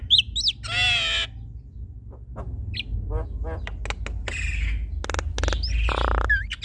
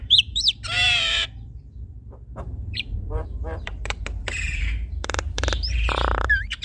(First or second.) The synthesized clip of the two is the second